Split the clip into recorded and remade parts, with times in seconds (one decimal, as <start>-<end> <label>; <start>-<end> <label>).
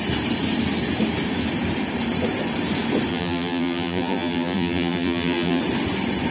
0.0-3.1 recorded; 3.1-5.6 remade; 5.6-6.3 recorded